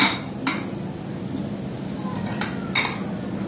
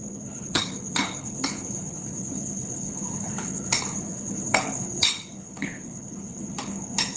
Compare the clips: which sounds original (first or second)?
first